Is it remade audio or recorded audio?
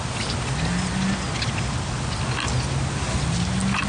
recorded